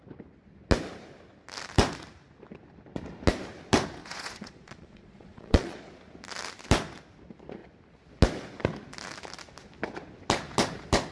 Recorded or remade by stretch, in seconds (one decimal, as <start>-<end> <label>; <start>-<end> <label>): 0.0-4.0 recorded; 4.0-5.9 remade; 5.9-11.1 recorded